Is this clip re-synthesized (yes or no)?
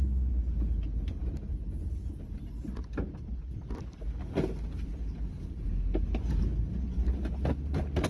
no